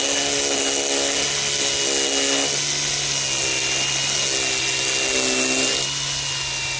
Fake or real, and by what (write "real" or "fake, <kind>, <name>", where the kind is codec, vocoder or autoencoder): real